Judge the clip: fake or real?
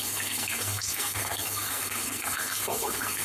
fake